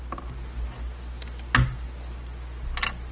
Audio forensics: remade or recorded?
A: recorded